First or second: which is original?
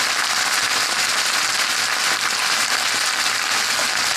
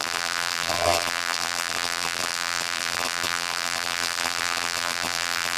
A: first